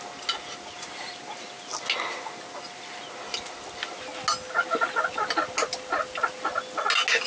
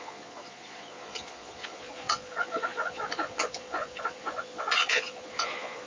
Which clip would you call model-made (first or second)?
second